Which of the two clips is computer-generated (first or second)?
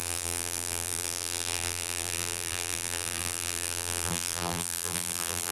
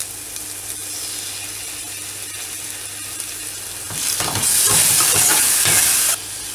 first